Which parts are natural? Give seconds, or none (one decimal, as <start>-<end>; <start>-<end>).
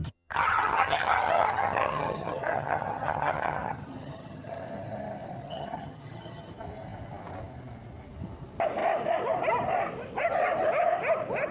4.6-5.4; 6.5-11.5